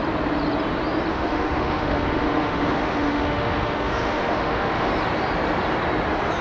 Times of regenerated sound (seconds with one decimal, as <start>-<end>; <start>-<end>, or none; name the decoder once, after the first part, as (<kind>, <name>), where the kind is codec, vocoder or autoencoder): 1.1-4.9 (autoencoder, DAC-VAE)